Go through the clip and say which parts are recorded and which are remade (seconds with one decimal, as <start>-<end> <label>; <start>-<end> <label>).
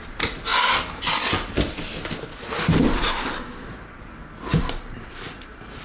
0.0-4.5 recorded; 4.5-5.8 remade